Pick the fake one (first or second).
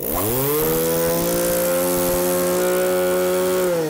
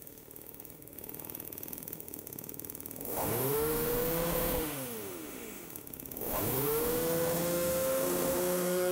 second